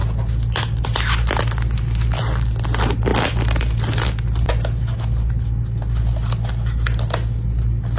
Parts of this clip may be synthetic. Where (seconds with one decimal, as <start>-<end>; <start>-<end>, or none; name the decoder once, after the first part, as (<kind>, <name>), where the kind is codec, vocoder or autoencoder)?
none